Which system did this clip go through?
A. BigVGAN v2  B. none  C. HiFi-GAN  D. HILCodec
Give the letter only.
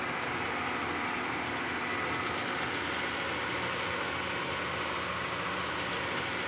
B